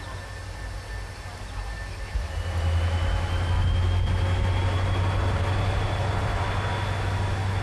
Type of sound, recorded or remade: recorded